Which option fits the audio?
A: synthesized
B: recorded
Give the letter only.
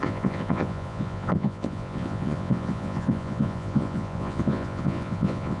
A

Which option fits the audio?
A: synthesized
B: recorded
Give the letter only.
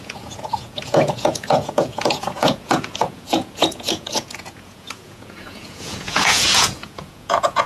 A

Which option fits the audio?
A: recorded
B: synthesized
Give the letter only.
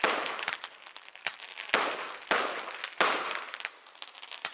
A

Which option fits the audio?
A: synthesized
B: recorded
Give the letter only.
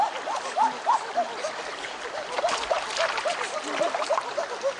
B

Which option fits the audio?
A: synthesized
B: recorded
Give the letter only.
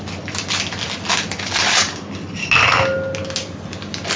B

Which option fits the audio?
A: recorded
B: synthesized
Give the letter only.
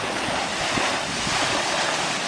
A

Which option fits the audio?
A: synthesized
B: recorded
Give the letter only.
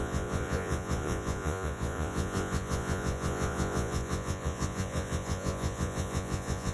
A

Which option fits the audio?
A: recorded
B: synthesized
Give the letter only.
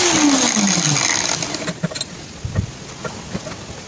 A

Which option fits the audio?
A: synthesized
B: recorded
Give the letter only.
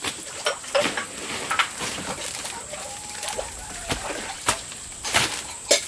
B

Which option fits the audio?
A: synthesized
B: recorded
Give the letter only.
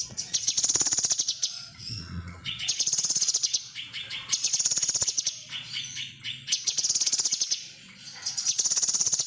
A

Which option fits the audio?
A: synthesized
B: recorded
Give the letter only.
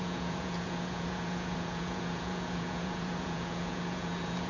A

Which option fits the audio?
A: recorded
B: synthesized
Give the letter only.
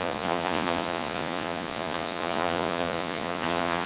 B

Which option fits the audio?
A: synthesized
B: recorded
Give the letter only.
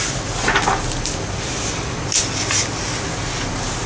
B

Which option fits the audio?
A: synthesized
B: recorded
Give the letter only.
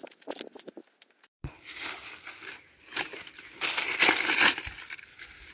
B